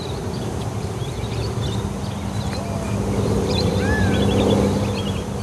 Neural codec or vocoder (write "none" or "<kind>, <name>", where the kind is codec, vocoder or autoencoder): vocoder, BigVGAN v2